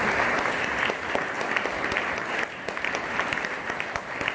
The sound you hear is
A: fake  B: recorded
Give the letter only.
B